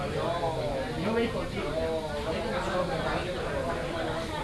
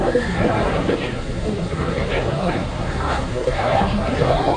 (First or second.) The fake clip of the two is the second